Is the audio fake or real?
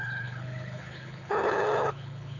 fake